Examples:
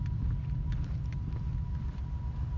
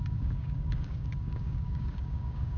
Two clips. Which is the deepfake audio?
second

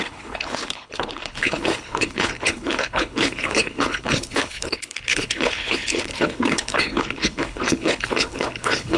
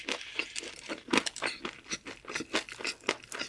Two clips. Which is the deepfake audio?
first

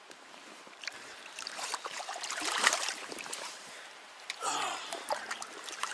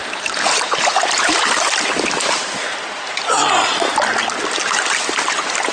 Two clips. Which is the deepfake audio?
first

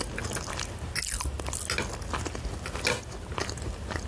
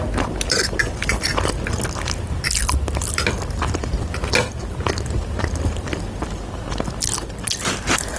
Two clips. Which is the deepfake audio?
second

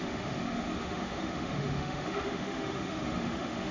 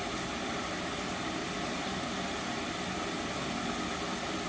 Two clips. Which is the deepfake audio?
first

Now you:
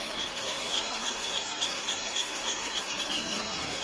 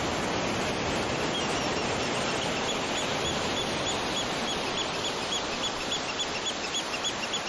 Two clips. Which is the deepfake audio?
first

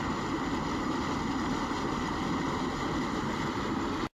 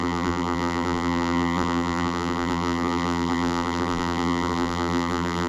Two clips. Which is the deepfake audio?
second